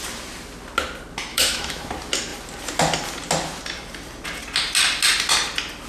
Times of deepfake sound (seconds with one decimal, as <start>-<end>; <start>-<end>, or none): 1.3-1.9